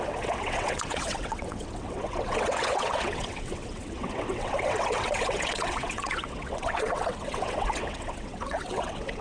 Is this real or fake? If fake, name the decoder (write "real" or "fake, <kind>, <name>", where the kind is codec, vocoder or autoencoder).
fake, vocoder, WaveNeXt